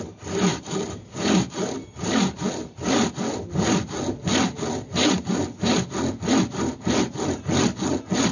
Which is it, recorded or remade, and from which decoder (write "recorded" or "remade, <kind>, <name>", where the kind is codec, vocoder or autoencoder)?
recorded